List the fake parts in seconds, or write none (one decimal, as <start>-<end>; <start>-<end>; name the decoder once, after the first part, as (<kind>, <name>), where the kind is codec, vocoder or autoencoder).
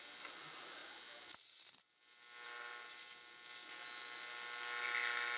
none